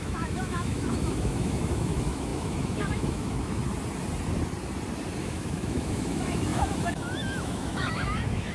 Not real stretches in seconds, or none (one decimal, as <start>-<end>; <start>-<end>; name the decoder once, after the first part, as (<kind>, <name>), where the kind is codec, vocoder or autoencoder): 0.0-3.6 (autoencoder, DAC-VAE); 5.2-8.5